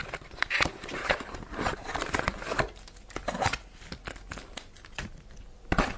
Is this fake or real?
real